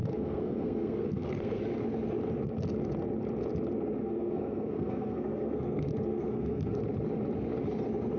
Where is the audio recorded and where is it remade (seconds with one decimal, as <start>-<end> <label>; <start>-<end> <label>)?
0.0-1.6 remade; 1.6-4.0 recorded; 4.0-6.8 remade; 6.8-8.2 recorded